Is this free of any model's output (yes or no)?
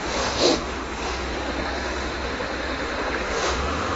no